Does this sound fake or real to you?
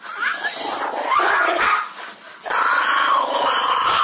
real